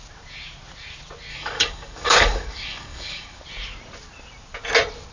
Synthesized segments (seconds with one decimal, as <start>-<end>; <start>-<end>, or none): 1.3-3.4